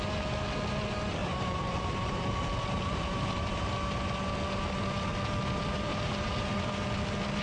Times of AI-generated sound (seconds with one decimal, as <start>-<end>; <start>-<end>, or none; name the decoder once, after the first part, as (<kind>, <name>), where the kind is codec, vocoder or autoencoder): 1.2-3.7 (vocoder, BigVGAN v2); 5.9-6.7